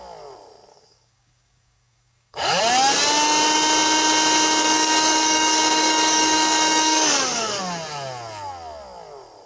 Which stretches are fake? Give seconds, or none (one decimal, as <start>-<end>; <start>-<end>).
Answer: 0.7-2.6; 4.6-7.6